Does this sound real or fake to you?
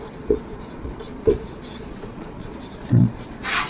fake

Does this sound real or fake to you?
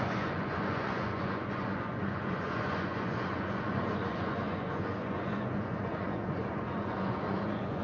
fake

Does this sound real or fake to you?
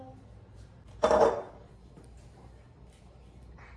fake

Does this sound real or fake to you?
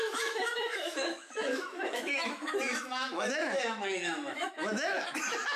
fake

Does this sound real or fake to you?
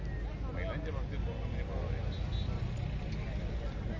real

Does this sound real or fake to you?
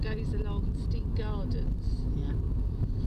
real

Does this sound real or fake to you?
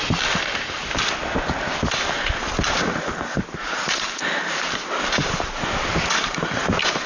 real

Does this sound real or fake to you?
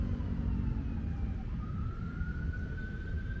real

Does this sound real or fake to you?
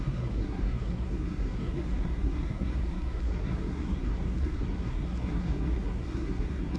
fake